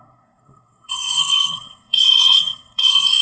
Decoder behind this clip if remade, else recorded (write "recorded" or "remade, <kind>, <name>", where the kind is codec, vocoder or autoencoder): remade, codec, SNAC